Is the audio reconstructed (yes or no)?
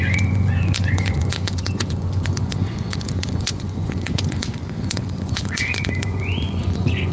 yes